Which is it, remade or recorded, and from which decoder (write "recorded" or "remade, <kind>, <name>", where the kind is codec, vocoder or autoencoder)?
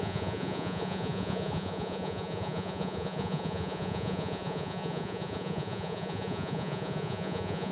remade, vocoder, Vocos